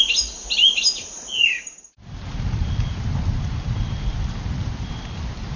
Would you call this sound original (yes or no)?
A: yes